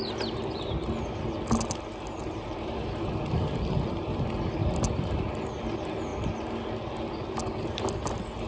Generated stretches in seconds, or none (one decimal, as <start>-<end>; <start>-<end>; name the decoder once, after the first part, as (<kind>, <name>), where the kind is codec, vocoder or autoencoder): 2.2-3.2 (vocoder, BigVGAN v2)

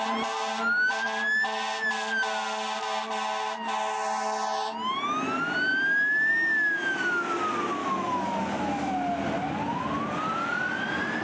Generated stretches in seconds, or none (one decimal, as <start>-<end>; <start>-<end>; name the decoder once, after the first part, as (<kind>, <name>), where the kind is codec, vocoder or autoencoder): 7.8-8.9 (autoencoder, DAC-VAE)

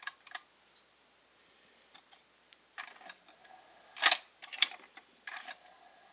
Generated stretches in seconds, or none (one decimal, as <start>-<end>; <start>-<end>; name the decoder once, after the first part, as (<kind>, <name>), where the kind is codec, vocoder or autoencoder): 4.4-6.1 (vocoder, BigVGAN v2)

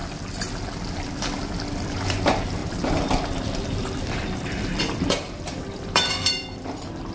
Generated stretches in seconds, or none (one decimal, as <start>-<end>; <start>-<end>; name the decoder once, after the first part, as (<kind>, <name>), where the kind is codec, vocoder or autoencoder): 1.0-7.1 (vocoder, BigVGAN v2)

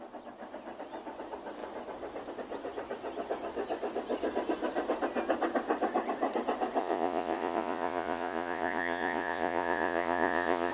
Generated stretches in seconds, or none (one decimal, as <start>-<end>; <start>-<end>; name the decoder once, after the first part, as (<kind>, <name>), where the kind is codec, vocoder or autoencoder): 6.8-10.7 (vocoder, Vocos)

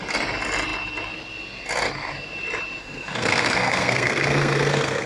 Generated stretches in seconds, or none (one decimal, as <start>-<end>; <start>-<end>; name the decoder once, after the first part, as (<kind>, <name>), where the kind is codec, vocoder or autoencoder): 2.8-5.1 (codec, SNAC)